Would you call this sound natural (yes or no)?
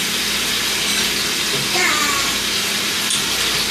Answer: yes